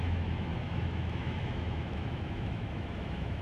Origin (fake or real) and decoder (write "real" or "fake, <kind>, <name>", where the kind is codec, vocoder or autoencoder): fake, autoencoder, DAC-VAE